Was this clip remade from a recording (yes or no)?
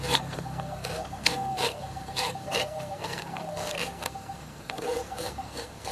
yes